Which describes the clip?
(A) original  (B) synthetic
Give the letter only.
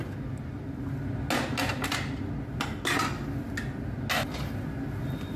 A